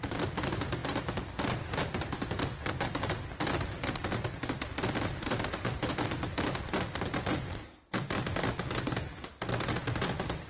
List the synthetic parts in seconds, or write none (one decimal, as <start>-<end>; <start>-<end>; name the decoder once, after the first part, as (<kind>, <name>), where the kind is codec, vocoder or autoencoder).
0.0-0.8 (vocoder, BigVGAN v2); 2.0-4.0; 5.8-10.5